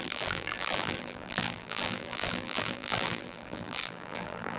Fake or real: fake